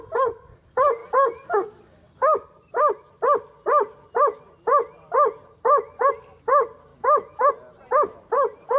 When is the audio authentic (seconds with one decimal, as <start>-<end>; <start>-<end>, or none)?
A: 0.0-6.9; 7.5-8.8